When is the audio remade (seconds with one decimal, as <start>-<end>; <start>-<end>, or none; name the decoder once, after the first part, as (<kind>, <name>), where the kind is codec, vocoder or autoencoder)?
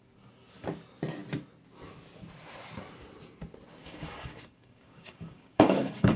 3.8-6.2 (codec, DAC)